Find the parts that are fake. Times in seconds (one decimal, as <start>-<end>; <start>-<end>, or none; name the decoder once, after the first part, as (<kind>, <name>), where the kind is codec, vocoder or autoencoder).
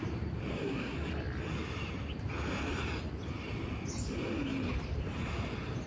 0.5-1.1 (codec, SNAC)